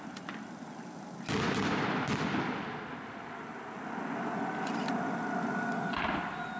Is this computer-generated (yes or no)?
no